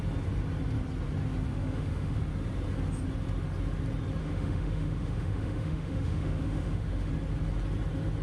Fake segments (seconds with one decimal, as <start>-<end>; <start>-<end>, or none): 1.5-2.2; 4.2-7.1